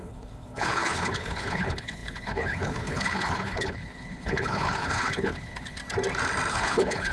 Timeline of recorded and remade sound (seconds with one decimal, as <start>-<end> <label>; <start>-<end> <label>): 0.0-5.8 remade; 5.8-6.5 recorded; 6.5-7.1 remade